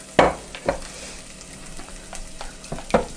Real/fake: real